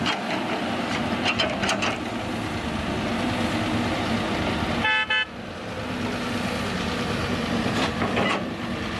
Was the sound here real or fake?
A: real